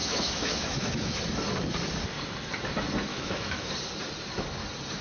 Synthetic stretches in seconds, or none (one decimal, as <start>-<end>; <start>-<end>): 0.0-1.2; 3.1-3.7